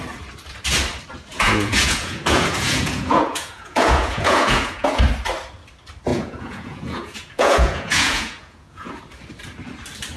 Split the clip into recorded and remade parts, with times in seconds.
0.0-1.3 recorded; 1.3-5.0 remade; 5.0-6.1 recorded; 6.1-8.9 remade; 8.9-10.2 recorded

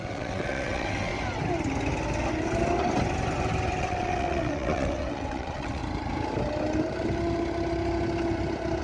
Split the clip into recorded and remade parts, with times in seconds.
0.0-1.1 remade; 1.1-3.8 recorded; 3.8-5.8 remade; 5.8-8.8 recorded

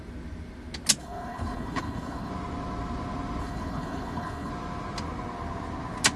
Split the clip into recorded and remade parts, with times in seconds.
0.0-1.0 recorded; 1.0-2.3 remade; 2.3-3.4 recorded; 3.4-4.5 remade; 4.5-6.2 recorded